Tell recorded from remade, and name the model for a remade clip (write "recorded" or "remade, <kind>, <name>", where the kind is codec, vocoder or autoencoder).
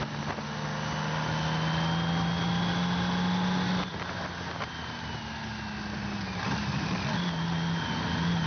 recorded